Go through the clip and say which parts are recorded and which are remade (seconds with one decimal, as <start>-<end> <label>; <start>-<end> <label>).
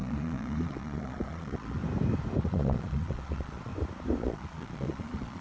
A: 0.0-1.8 remade; 1.8-2.4 recorded; 2.4-3.7 remade; 3.7-4.2 recorded; 4.2-5.4 remade